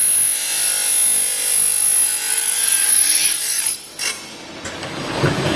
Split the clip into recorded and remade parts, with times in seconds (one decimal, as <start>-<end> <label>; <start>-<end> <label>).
0.0-2.3 recorded; 2.3-3.9 remade; 3.9-4.8 recorded; 4.8-5.6 remade